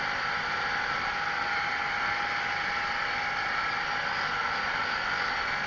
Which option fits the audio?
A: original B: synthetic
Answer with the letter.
A